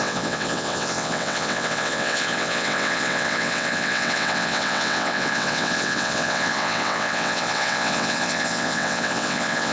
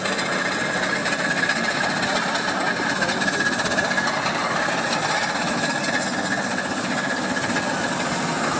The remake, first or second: first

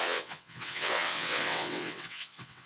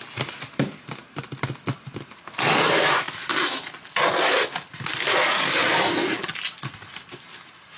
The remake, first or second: first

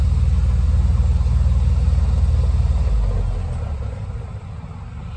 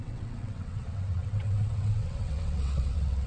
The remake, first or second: second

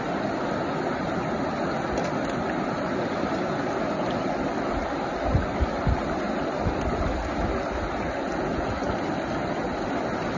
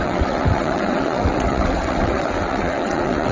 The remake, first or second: second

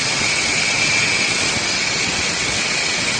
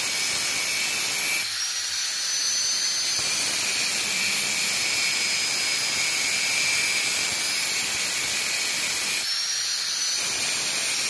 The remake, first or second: first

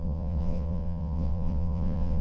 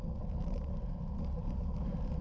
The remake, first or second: first